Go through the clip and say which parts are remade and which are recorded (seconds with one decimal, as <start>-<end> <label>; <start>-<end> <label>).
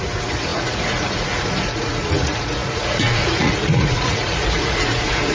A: 0.0-5.3 remade